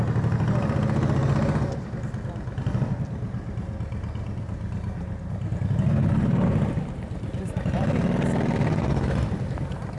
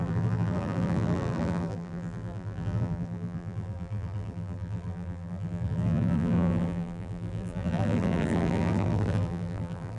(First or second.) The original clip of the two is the first